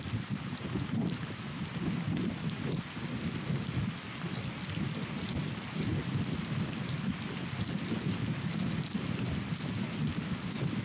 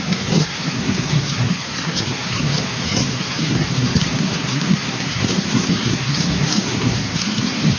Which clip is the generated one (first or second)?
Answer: second